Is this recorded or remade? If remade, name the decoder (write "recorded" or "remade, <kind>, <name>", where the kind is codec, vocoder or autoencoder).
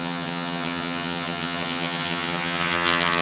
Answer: remade, vocoder, HiFi-GAN